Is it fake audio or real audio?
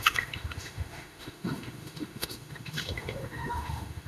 fake